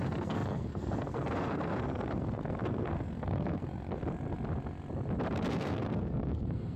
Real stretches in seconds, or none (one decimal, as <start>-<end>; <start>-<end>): 4.0-5.5